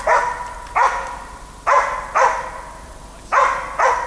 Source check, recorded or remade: recorded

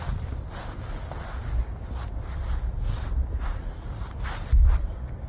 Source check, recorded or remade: recorded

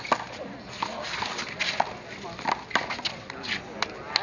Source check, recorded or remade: recorded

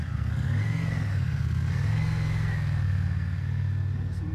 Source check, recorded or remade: remade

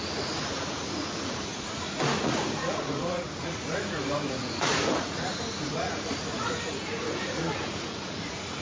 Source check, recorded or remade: remade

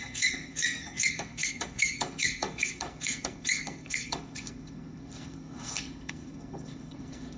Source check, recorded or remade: remade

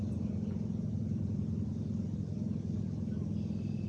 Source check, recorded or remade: recorded